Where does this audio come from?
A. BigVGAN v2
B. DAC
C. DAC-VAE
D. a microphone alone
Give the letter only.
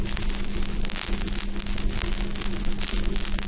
D